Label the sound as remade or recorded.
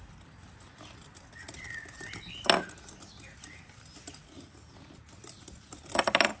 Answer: recorded